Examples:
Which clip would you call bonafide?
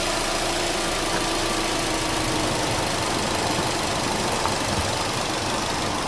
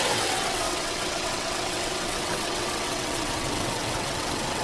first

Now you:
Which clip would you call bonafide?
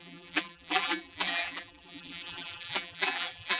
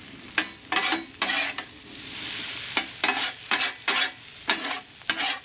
second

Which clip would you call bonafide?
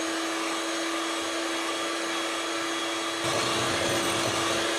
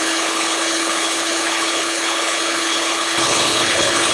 first